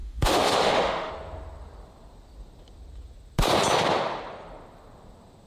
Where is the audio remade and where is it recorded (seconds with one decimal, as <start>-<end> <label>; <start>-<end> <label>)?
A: 0.0-1.1 remade; 1.1-5.5 recorded